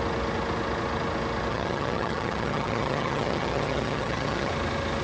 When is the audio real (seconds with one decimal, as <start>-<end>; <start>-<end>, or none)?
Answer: 0.0-1.5; 4.5-5.0